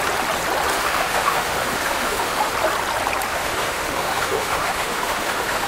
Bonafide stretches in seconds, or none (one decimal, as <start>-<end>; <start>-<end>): 0.0-0.7; 2.5-3.3